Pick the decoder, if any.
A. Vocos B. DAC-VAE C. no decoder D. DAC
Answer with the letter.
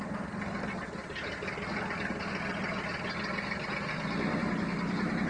C